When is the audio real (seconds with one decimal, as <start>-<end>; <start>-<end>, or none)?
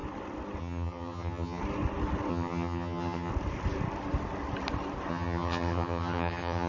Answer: 0.0-0.6; 1.6-2.3; 3.3-5.1